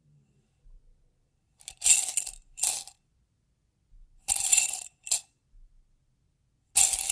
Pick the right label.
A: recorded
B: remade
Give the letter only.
A